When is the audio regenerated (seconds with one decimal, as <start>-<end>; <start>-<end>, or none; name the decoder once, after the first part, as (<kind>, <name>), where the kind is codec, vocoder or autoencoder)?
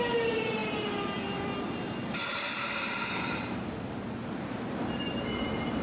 0.0-5.8 (vocoder, BigVGAN v2)